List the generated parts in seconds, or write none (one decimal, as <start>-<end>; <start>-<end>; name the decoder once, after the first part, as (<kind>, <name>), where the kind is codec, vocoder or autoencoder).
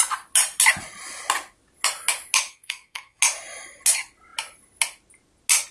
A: 2.5-3.2 (codec, SNAC)